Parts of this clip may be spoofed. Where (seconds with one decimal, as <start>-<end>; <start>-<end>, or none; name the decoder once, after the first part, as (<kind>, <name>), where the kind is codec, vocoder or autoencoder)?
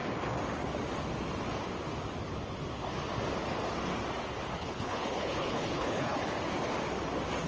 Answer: 4.5-6.2 (codec, HILCodec)